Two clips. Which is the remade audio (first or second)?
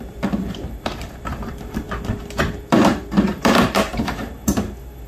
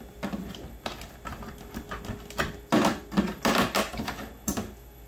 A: first